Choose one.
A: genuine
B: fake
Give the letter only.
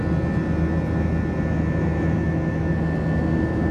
A